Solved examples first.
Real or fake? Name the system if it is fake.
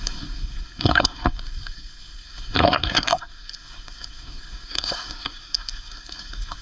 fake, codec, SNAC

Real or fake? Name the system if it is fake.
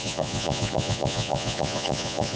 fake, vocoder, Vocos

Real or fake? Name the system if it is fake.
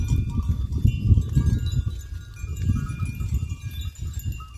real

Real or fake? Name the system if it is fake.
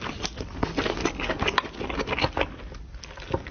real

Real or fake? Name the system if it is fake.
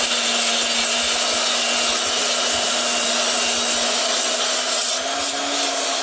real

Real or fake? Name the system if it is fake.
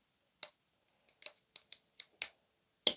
real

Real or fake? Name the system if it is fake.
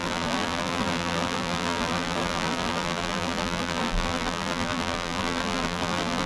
fake, vocoder, BigVGAN v2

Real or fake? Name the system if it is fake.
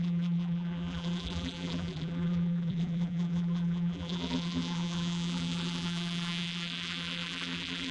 fake, vocoder, BigVGAN v2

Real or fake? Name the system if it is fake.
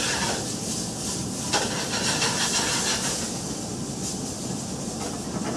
real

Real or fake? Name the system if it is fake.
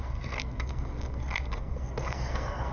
fake, codec, SNAC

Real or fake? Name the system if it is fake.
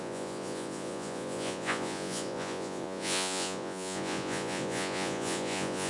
fake, vocoder, Vocos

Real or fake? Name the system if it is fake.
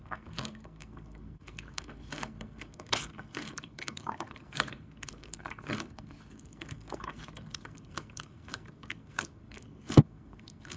fake, codec, SNAC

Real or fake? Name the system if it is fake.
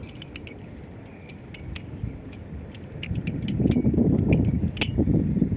real